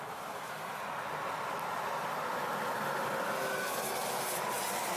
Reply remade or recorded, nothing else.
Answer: recorded